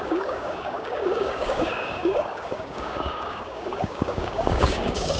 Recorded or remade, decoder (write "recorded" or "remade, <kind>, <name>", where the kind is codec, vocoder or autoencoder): remade, codec, DAC